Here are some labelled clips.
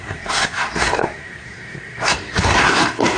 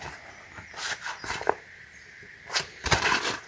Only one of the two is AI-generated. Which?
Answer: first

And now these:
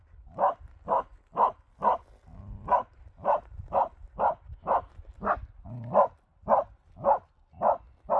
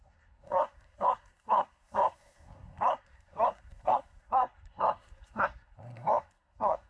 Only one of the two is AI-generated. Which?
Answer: second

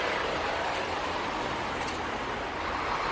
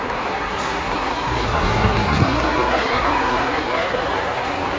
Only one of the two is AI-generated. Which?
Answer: second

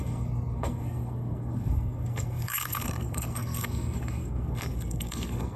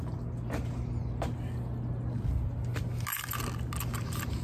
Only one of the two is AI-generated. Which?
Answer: first